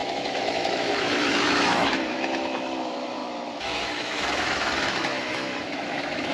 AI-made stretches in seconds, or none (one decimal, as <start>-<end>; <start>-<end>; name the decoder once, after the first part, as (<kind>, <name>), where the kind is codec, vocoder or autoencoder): 0.0-6.3 (autoencoder, DAC-VAE)